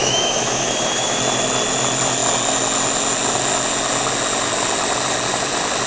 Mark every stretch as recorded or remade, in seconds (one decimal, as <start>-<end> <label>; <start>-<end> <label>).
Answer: 0.0-1.2 remade; 1.2-5.9 recorded